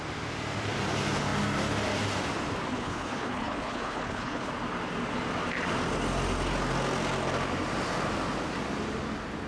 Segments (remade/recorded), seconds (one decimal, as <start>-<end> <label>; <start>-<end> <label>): 0.0-2.7 recorded; 2.7-4.5 remade; 4.5-9.5 recorded